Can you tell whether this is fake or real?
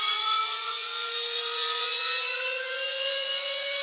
fake